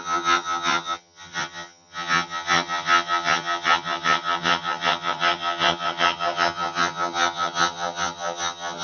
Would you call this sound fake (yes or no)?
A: yes